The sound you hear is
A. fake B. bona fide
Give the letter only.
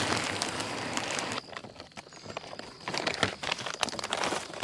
B